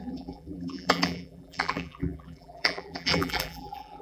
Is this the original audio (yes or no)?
no